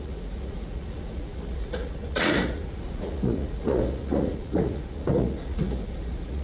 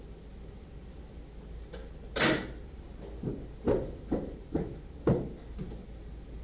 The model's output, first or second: first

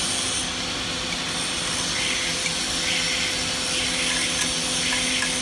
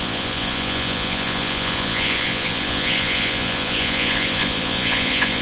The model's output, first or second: second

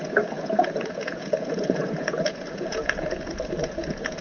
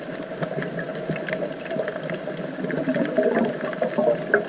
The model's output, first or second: first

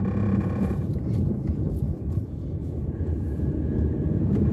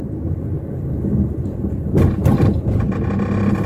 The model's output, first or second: first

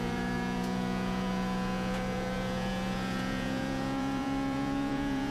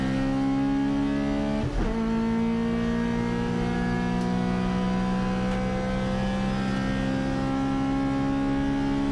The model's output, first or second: first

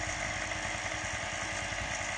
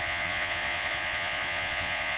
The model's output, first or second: second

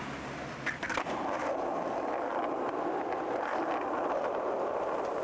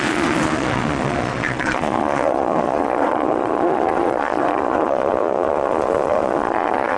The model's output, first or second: second